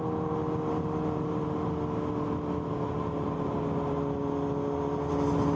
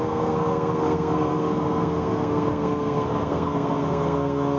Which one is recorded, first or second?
first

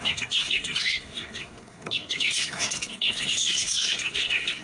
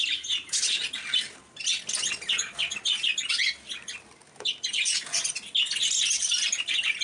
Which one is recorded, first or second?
second